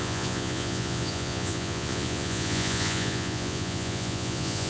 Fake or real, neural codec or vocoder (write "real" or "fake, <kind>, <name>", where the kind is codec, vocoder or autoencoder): fake, vocoder, Vocos